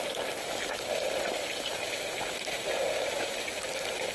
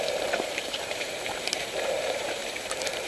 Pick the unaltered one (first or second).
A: first